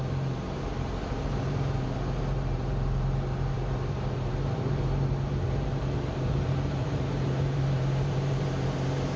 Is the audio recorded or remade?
remade